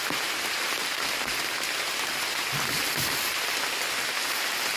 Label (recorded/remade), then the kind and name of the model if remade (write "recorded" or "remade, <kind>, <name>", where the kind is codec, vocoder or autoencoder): recorded